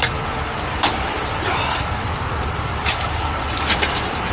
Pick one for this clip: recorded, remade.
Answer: recorded